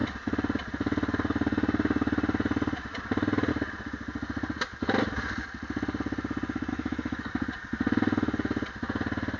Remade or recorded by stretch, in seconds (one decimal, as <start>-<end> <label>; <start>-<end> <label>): 0.0-6.7 recorded; 6.7-7.3 remade; 7.3-9.4 recorded